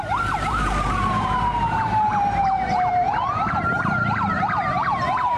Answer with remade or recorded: remade